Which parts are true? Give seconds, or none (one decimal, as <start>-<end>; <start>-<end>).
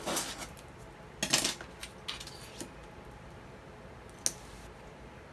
0.0-5.3